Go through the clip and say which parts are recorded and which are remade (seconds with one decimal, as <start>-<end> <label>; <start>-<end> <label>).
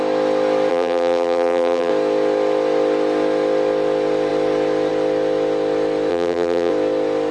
0.0-0.7 recorded; 0.7-1.9 remade; 1.9-6.1 recorded; 6.1-6.7 remade; 6.7-7.3 recorded